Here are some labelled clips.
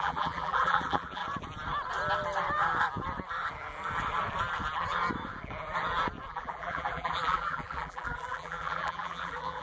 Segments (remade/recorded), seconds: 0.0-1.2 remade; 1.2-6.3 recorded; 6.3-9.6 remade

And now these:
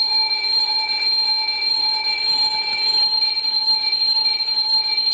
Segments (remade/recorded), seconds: 0.0-1.1 remade; 1.1-1.7 recorded; 1.7-5.1 remade

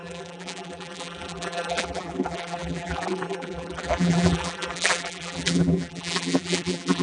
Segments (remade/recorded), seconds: 0.0-7.0 remade

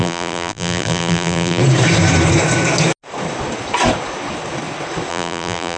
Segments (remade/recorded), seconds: 0.0-1.6 remade; 1.6-5.1 recorded; 5.1-5.8 remade

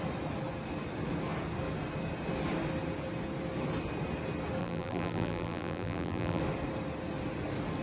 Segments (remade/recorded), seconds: 0.0-4.6 recorded; 4.6-6.4 remade; 6.4-7.8 recorded

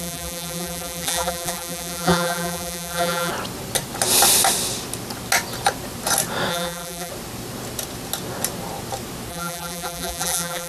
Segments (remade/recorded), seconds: 0.0-3.3 remade; 3.3-6.5 recorded; 6.5-7.1 remade; 7.1-9.3 recorded; 9.3-10.7 remade

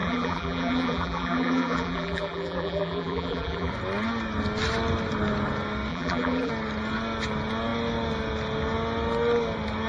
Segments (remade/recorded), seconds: 0.0-3.7 remade; 3.7-5.9 recorded; 5.9-6.5 remade; 6.5-9.9 recorded

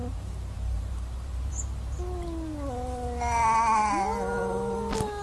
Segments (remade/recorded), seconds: 0.0-1.5 remade; 1.5-5.2 recorded